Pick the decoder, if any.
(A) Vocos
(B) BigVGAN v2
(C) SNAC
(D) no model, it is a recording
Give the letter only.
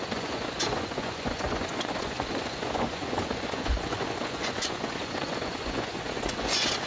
A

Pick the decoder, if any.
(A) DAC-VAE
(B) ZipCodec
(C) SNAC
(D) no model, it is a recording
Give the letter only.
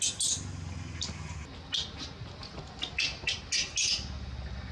D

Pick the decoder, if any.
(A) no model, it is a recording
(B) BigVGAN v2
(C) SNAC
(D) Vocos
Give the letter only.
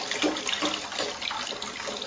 A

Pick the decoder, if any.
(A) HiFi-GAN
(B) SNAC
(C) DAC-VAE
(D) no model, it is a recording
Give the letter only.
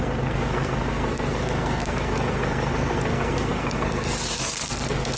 B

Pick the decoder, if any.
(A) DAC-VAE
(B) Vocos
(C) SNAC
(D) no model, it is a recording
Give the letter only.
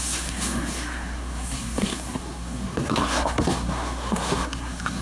C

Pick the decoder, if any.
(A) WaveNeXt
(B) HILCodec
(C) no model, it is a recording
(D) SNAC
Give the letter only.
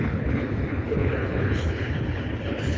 B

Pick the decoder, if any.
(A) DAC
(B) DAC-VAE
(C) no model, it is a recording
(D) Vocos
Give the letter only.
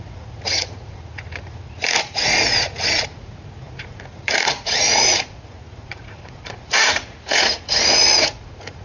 D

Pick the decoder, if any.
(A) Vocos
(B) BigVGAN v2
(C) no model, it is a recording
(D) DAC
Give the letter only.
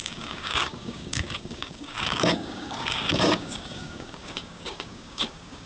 D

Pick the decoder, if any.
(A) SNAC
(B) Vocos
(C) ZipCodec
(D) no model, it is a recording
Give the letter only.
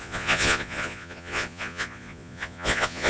B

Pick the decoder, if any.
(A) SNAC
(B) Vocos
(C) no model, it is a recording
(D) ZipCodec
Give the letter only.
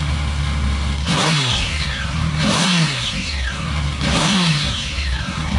A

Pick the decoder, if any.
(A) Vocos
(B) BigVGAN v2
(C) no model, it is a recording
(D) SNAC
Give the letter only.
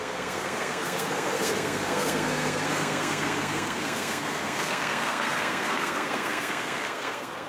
D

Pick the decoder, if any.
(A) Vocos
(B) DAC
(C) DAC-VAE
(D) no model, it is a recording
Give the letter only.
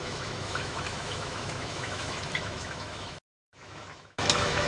C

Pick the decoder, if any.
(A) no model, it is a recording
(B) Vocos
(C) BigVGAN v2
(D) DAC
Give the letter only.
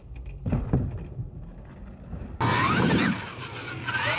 A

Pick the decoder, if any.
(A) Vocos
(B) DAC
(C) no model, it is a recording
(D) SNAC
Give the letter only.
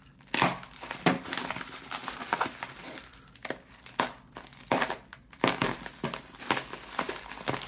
C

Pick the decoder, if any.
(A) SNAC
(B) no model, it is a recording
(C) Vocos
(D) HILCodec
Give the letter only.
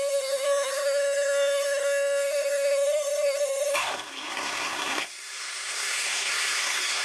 A